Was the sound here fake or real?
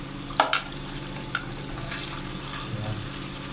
real